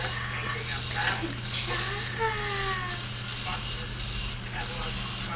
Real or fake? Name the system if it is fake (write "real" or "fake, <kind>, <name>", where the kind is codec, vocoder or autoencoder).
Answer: real